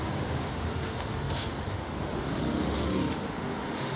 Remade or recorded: remade